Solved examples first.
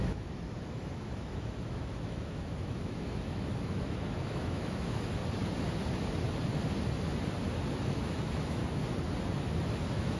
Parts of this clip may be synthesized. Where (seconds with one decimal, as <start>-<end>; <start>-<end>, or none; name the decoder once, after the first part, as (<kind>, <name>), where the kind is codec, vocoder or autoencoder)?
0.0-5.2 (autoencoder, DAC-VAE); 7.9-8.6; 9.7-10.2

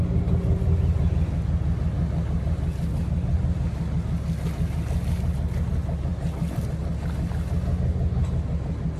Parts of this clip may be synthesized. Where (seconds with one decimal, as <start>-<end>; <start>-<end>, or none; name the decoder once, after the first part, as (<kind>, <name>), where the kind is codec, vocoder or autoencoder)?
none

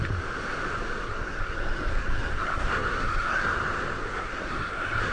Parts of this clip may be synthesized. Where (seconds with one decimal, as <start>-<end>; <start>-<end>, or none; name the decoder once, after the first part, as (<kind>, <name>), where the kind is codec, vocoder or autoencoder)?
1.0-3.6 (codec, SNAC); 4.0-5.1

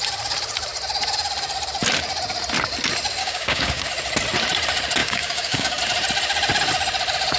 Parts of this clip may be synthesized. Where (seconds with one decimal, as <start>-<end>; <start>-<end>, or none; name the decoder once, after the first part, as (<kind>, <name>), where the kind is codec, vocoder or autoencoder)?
3.2-3.9 (codec, DAC); 5.0-5.8

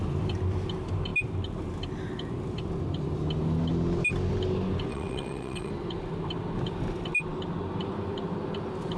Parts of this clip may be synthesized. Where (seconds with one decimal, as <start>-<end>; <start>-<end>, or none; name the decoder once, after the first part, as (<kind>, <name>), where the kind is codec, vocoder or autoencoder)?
4.9-5.7 (vocoder, WaveNeXt)